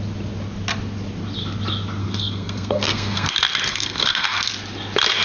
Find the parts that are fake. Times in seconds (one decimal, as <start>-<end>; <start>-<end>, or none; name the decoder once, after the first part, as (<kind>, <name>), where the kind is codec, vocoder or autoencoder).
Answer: 2.0-3.3 (codec, SNAC); 3.7-4.5